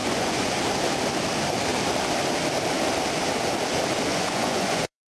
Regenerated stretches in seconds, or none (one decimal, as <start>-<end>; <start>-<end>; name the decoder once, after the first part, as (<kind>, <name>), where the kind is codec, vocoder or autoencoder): 0.0-0.6 (vocoder, Vocos); 4.1-5.1